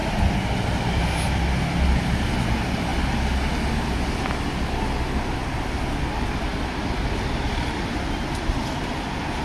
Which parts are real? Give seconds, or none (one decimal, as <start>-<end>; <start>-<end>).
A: 0.0-9.4